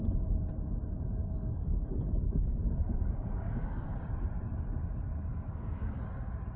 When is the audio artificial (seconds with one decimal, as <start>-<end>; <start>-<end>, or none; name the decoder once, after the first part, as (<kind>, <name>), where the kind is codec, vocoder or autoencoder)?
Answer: 1.2-4.0 (codec, DAC); 5.3-6.0